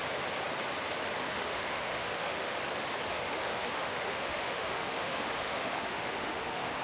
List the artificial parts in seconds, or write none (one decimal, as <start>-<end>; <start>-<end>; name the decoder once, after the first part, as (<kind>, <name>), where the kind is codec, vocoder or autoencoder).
1.2-2.6 (autoencoder, DAC-VAE); 3.1-6.8